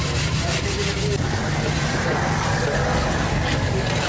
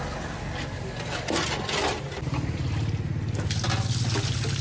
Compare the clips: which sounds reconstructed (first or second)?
first